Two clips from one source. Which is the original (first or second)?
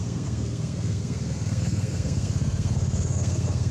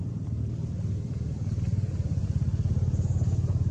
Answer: second